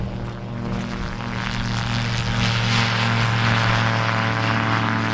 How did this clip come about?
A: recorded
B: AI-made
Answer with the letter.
A